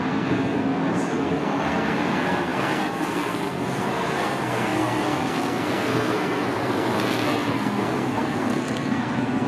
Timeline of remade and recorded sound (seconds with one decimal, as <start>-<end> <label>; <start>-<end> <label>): 0.0-9.5 remade

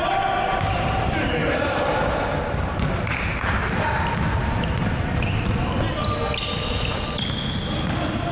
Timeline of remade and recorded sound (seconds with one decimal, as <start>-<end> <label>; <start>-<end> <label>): 0.0-0.5 recorded; 0.5-5.4 remade; 5.4-8.3 recorded

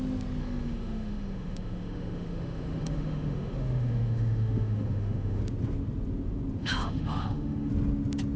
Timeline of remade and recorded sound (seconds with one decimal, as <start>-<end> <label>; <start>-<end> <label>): 0.0-0.4 recorded; 0.4-5.4 remade; 5.4-6.6 recorded; 6.6-7.7 remade; 7.7-8.4 recorded